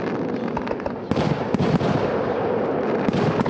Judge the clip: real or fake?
real